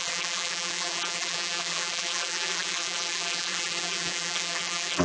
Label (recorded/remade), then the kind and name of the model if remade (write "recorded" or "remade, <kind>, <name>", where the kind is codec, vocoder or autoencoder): remade, vocoder, BigVGAN v2